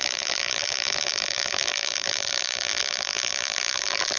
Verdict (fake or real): fake